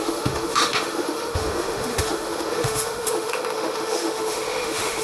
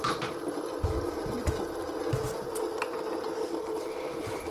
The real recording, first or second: second